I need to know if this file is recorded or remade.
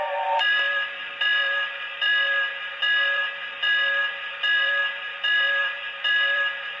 remade